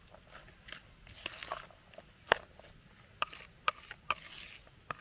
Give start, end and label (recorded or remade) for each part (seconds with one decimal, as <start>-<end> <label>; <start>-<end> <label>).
0.0-5.0 recorded

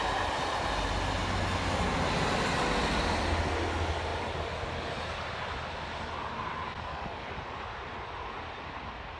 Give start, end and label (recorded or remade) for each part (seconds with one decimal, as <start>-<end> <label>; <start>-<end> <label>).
0.0-6.9 recorded; 6.9-7.4 remade; 7.4-9.2 recorded

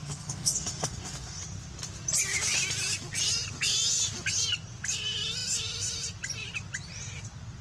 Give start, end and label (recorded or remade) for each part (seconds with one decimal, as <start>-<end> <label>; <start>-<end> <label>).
0.0-1.4 remade; 1.4-7.6 recorded